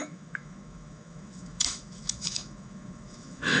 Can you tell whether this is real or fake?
fake